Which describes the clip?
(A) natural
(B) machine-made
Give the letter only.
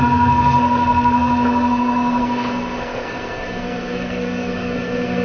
B